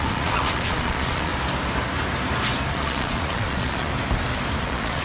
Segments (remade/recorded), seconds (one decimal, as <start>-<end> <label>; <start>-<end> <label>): 0.0-1.3 remade; 1.3-2.7 recorded; 2.7-3.9 remade; 3.9-4.6 recorded; 4.6-5.0 remade